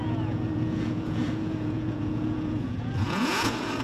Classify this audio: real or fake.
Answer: fake